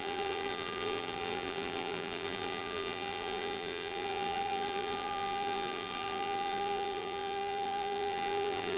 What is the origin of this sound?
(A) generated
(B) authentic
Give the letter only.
A